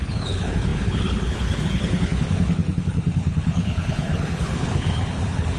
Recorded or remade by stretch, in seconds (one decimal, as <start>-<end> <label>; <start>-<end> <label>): 0.0-5.6 remade